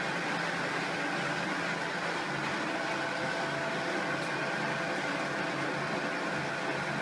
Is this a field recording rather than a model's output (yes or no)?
yes